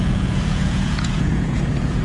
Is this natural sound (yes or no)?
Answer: no